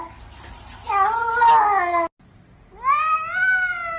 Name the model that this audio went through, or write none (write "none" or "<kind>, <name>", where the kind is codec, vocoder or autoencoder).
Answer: none